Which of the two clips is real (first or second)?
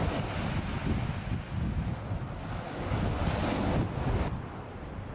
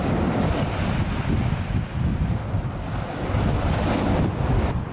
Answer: first